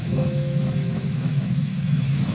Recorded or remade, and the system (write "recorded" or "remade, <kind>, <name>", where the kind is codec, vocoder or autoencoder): remade, autoencoder, DAC-VAE